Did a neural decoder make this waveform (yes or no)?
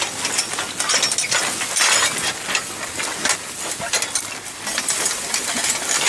no